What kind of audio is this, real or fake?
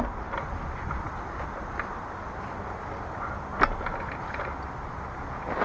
real